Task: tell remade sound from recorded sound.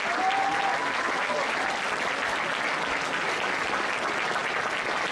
recorded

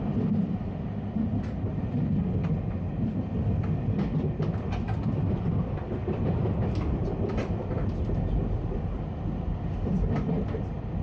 recorded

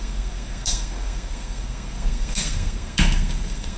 remade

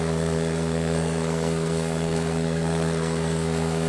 remade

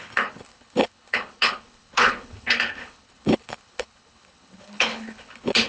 remade